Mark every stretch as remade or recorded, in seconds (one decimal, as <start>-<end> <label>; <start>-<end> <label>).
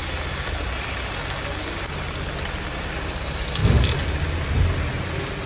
0.0-5.5 recorded